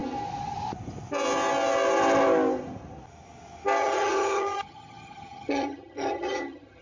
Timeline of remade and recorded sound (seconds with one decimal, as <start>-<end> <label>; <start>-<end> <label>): 0.0-3.8 recorded; 3.8-6.8 remade

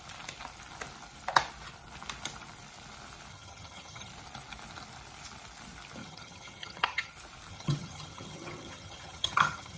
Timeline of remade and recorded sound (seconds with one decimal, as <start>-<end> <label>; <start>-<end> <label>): 0.0-3.3 recorded; 3.3-4.1 remade; 4.1-6.0 recorded; 6.0-7.1 remade; 7.1-7.5 recorded; 7.5-9.8 remade

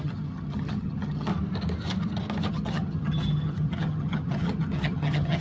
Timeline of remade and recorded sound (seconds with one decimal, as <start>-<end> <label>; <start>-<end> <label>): 0.0-1.3 remade; 1.3-2.5 recorded; 2.5-5.4 remade

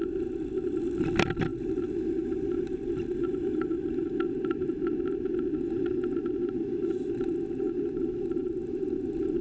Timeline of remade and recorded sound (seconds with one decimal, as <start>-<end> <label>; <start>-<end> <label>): 0.0-9.4 recorded